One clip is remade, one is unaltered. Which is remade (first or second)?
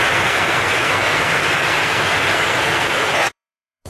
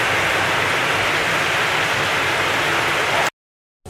first